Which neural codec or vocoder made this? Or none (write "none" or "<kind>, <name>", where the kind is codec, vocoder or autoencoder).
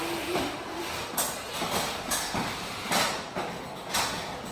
none